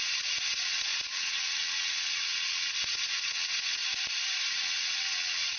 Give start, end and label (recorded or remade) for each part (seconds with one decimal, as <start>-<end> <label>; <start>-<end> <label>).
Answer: 0.0-3.8 remade; 3.8-4.5 recorded; 4.5-5.6 remade